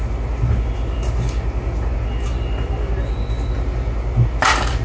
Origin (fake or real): real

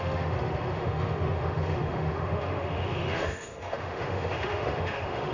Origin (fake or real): fake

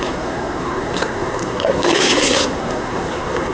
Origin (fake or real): fake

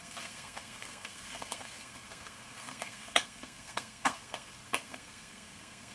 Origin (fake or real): fake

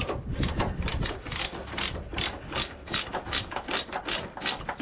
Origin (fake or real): real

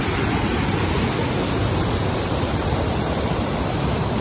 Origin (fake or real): fake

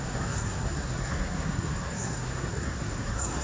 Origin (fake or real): fake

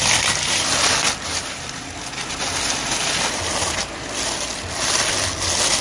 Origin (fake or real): real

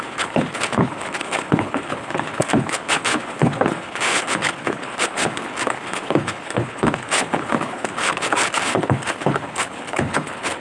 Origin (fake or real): fake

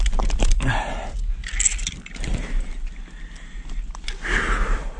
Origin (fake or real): real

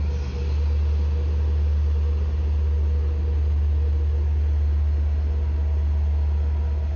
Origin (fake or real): real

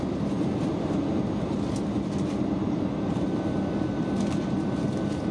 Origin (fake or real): real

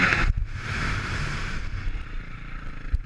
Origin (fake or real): fake